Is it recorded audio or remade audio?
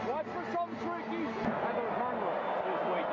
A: recorded